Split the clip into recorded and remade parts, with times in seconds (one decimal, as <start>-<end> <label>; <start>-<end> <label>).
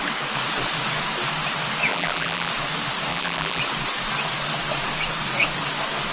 0.0-1.9 recorded; 1.9-2.5 remade; 2.5-3.1 recorded; 3.1-3.6 remade; 3.6-6.1 recorded